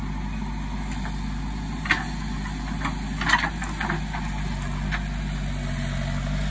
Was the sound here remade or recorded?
recorded